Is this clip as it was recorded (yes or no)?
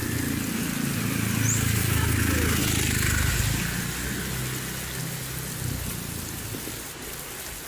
yes